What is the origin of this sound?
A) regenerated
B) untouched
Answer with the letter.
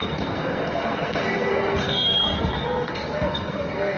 A